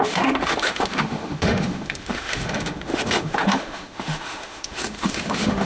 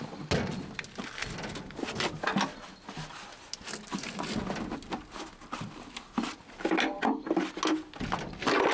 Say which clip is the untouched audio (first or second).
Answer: second